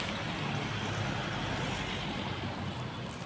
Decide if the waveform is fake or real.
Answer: real